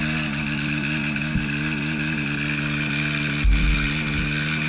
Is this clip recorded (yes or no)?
yes